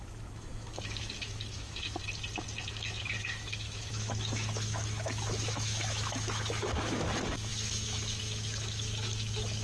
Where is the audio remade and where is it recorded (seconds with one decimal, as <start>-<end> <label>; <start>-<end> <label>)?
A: 0.0-2.0 remade; 2.0-2.6 recorded; 2.6-9.6 remade